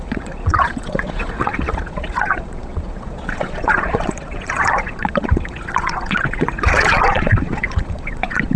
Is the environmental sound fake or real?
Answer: fake